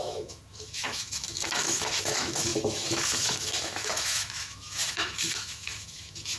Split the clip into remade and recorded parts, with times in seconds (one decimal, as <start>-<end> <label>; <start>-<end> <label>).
0.0-6.4 remade

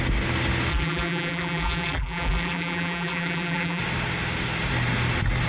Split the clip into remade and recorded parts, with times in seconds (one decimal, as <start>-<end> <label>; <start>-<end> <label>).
0.0-0.7 recorded; 0.7-3.8 remade; 3.8-5.5 recorded